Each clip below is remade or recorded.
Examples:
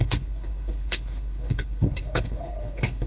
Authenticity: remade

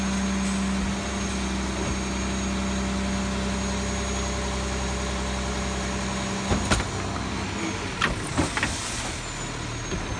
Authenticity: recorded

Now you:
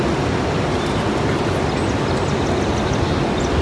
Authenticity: recorded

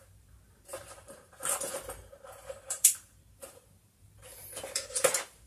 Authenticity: remade